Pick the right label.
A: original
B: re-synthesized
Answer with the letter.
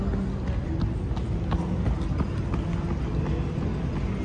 A